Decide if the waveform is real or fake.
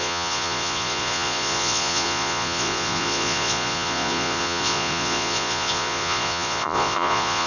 fake